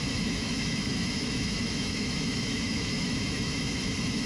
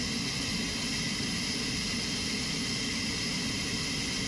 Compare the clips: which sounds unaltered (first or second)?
second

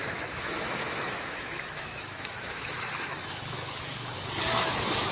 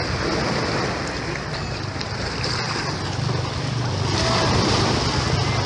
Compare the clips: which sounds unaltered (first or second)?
second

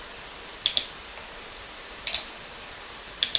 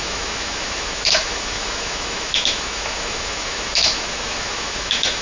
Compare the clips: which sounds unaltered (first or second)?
first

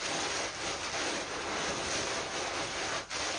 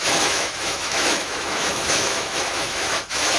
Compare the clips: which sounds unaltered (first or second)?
first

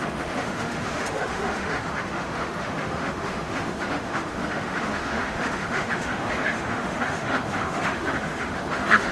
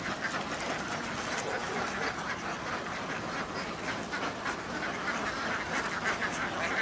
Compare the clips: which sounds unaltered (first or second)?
second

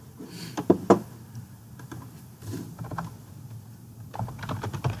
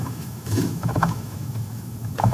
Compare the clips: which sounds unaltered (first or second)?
first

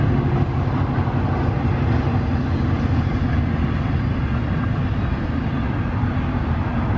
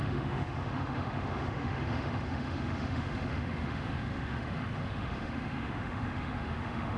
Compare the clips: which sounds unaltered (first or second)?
first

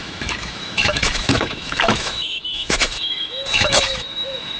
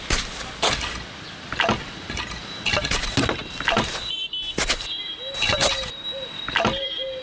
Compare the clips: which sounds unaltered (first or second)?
second